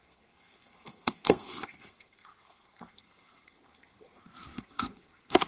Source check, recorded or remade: remade